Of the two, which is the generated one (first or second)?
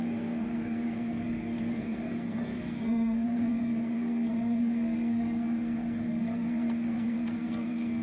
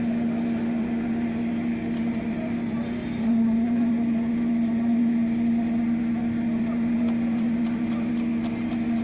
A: first